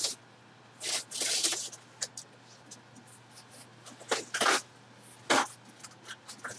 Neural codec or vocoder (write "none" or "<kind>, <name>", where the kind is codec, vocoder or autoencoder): none